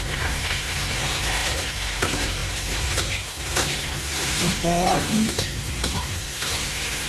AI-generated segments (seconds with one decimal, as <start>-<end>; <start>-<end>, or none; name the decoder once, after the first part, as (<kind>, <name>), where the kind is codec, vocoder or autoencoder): 0.0-7.1 (codec, SNAC)